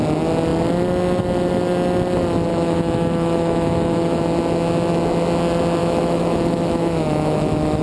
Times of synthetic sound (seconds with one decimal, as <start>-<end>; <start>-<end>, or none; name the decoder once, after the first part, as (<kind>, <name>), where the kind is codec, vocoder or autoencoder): 2.5-4.2 (autoencoder, DAC-VAE); 5.8-7.8